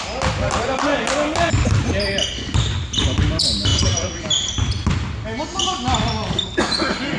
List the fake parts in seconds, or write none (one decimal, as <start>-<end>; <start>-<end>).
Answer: 3.7-4.2